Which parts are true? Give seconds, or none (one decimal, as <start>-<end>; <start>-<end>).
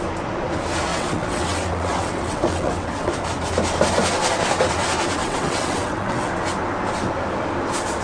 0.0-0.9; 3.1-5.2; 6.3-8.0